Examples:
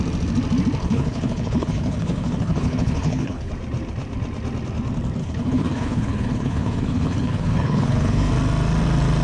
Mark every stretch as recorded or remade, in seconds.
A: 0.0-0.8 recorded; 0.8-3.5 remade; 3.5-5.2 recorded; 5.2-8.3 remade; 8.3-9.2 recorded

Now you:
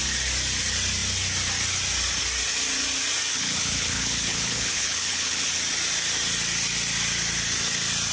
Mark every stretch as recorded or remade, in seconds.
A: 0.0-3.3 recorded; 3.3-5.5 remade; 5.5-8.1 recorded

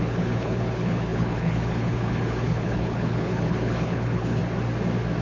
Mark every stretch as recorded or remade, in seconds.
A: 0.0-4.4 remade; 4.4-5.2 recorded

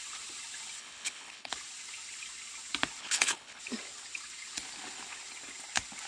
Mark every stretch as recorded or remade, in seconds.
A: 0.0-0.8 recorded; 0.8-1.5 remade; 1.5-3.0 recorded; 3.0-3.6 remade; 3.6-6.1 recorded

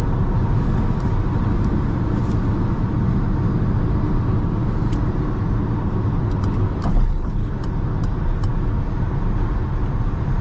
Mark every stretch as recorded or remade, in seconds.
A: 0.0-6.9 recorded; 6.9-7.5 remade; 7.5-10.4 recorded

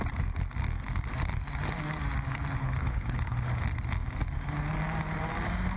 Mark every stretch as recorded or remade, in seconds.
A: 0.0-2.5 recorded; 2.5-3.4 remade; 3.4-5.8 recorded